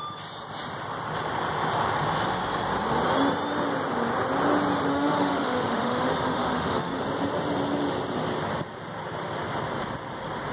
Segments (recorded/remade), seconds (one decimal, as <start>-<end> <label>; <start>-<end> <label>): 0.0-4.9 recorded; 4.9-7.0 remade; 7.0-10.5 recorded